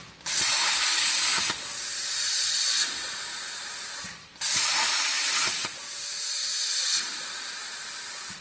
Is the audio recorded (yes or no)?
yes